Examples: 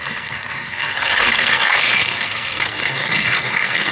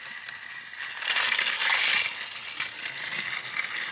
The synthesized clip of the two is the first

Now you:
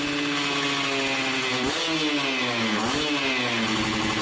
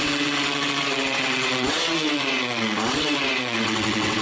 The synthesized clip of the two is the second